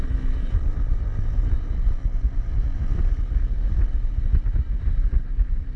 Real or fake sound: real